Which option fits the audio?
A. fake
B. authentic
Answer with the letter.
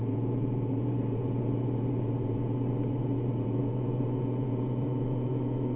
A